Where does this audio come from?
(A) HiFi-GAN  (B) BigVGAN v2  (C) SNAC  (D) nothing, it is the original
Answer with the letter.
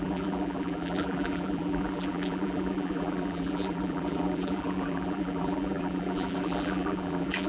B